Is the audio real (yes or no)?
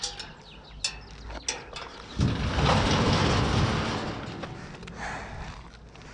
yes